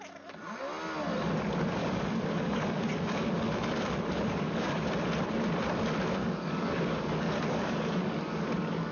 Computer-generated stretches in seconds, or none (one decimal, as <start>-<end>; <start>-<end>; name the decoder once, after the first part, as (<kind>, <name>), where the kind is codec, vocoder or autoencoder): 1.8-4.9 (codec, DAC); 6.2-8.9